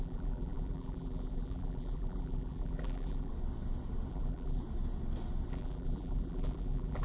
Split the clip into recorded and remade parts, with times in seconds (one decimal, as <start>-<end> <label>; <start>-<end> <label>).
0.0-3.3 remade; 3.3-4.1 recorded; 4.1-4.6 remade; 4.6-5.5 recorded; 5.5-7.0 remade